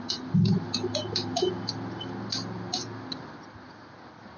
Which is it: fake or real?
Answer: real